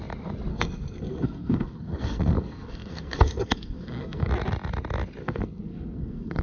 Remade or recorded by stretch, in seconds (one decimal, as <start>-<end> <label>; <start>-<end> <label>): 0.0-0.5 recorded; 0.5-4.3 remade; 4.3-5.2 recorded; 5.2-6.4 remade